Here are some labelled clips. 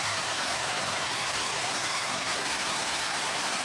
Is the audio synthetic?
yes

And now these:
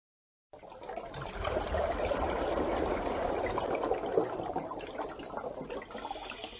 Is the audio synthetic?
no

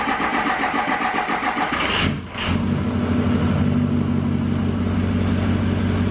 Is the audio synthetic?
no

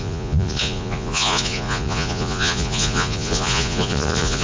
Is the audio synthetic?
yes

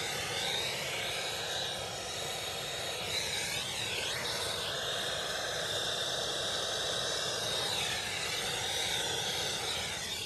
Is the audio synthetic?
yes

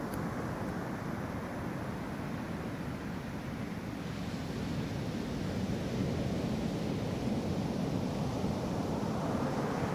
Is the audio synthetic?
no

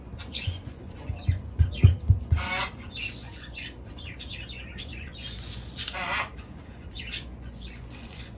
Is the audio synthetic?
yes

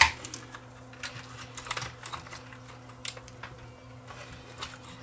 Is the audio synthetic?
no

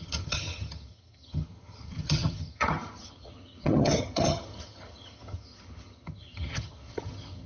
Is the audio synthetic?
yes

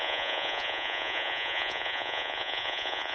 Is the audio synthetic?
yes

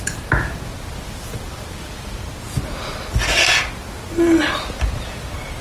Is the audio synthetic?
no